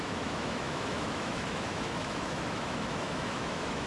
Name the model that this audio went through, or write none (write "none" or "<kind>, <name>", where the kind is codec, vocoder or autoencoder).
autoencoder, DAC-VAE